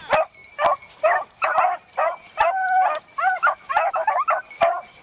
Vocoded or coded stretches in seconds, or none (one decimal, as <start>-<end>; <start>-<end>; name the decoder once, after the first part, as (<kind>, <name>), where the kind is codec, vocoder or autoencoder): none